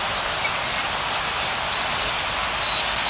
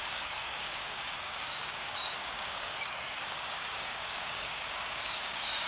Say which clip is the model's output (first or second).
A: second